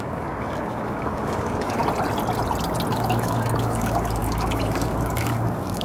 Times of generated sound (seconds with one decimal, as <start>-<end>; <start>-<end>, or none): 0.0-1.8; 2.9-5.8